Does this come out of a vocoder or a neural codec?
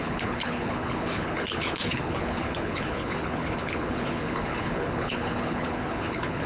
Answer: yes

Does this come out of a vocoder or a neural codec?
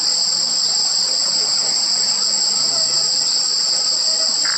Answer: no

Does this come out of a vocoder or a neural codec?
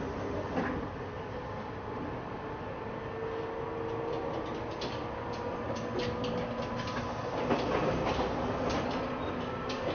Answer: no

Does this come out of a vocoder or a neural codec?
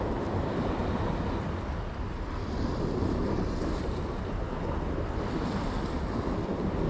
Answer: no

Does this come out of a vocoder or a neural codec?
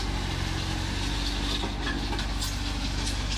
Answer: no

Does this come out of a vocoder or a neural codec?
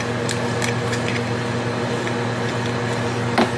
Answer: no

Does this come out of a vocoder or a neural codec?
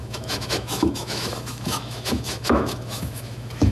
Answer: yes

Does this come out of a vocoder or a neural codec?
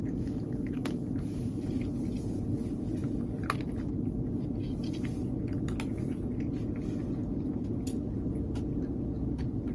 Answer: no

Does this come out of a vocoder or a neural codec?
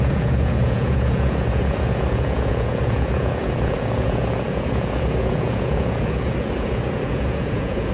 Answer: yes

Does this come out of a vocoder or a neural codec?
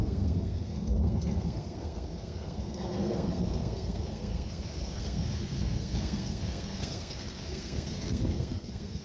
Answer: yes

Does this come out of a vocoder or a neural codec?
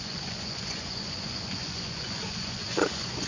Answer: yes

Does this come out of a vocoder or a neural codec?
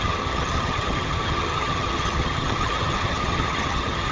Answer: yes